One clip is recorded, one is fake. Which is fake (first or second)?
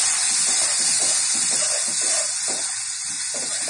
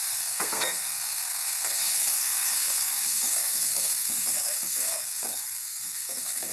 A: second